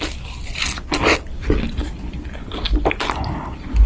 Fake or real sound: real